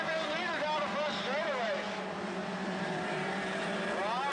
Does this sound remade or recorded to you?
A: remade